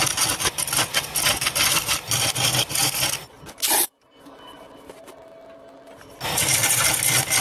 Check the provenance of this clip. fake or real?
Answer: real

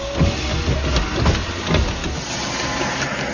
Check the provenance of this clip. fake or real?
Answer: real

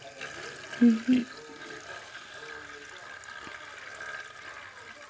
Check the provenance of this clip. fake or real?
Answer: real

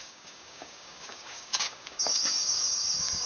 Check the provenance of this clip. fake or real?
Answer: fake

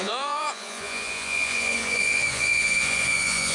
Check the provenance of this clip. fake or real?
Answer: fake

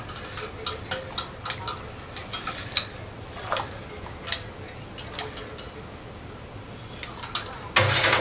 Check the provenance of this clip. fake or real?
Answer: real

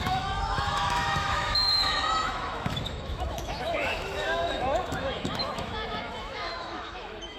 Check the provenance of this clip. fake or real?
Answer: fake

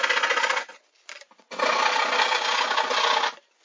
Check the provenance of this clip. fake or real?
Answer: real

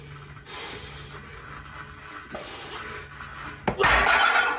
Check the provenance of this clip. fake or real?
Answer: real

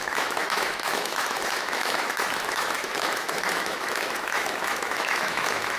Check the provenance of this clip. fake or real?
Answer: fake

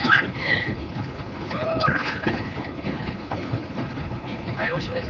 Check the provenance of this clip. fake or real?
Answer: fake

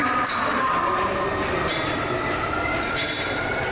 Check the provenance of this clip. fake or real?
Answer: real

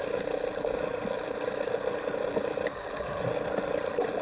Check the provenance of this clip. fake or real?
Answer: real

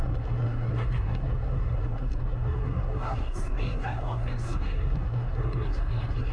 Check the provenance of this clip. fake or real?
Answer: fake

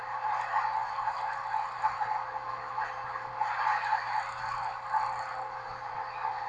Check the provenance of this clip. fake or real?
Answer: real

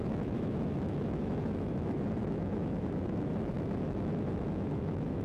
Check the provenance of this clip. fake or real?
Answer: fake